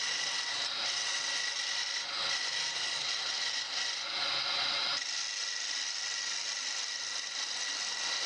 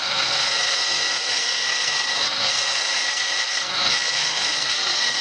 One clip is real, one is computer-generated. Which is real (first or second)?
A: first